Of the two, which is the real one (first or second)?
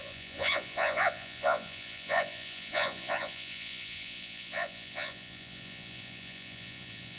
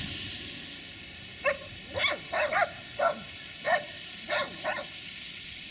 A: second